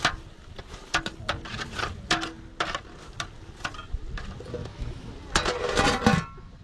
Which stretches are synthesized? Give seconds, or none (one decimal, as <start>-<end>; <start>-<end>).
4.6-5.1

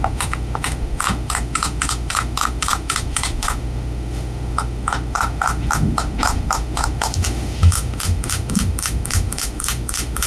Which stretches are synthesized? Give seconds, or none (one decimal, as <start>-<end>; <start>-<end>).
0.0-10.3

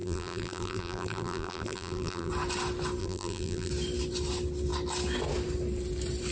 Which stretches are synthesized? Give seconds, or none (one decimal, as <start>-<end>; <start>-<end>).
0.0-2.3; 3.0-3.7

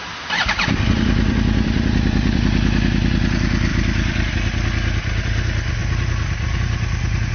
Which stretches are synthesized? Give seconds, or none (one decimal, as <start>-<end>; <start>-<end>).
0.4-3.1; 3.7-4.3; 5.8-7.3

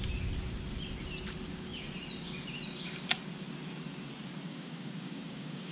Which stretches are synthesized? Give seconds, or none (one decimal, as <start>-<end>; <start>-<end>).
4.5-5.7

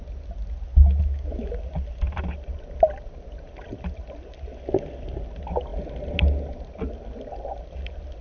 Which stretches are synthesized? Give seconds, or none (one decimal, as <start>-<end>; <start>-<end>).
0.7-1.5